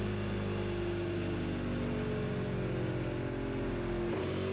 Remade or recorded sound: recorded